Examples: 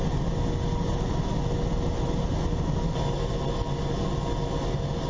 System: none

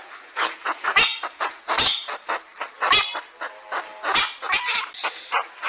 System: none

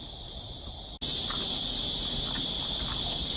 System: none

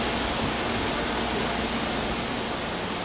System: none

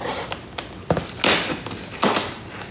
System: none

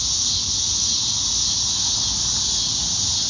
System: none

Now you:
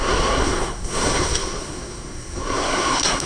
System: codec, SNAC